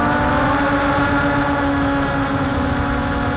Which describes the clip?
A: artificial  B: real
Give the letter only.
B